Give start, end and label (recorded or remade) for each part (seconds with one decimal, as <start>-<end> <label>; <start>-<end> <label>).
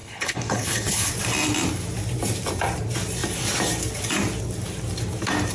0.0-1.1 remade; 1.1-5.5 recorded